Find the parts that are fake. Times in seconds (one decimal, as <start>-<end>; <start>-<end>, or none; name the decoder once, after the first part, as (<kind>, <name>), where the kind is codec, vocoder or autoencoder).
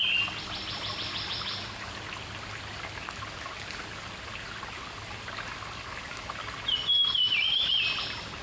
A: none